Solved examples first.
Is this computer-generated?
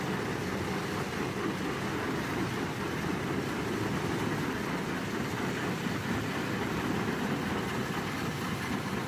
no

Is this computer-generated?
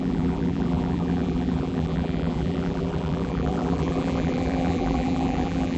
yes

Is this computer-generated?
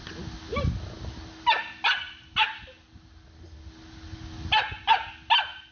no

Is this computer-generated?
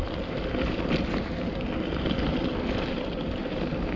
no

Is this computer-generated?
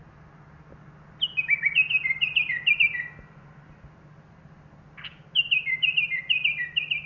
no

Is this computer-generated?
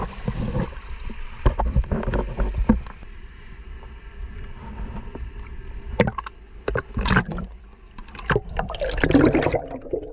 yes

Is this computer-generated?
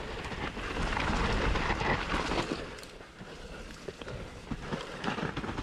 yes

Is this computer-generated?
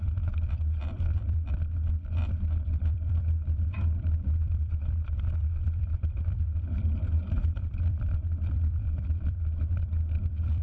yes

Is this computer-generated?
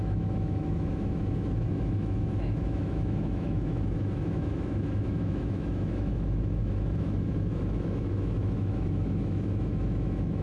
yes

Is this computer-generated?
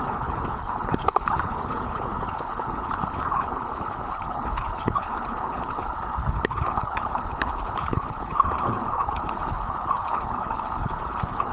yes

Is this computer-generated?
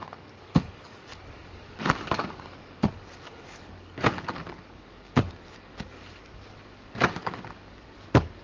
yes